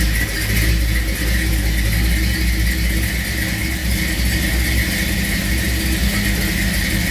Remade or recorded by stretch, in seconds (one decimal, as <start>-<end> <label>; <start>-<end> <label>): 0.0-7.1 recorded